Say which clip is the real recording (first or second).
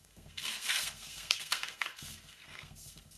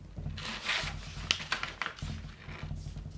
second